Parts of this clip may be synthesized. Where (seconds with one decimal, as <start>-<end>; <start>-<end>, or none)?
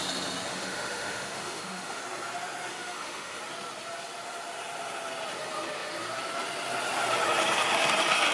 0.5-2.0; 2.7-3.4